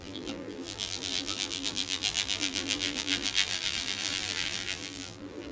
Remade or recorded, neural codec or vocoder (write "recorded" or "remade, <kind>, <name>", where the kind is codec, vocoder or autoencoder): remade, vocoder, BigVGAN v2